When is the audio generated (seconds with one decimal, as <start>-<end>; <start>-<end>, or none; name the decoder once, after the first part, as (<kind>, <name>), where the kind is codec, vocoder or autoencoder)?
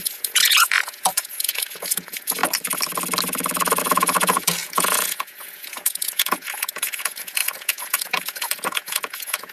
0.0-2.4 (vocoder, Vocos); 3.8-9.5